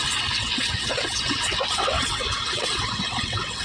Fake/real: fake